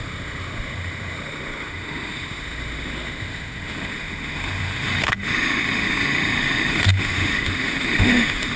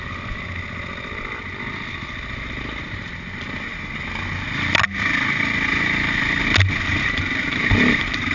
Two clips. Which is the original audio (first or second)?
second